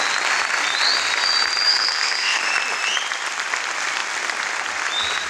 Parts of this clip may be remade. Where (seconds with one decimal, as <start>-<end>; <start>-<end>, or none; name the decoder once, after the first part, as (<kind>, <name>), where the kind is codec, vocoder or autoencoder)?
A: 1.7-2.4 (codec, SNAC)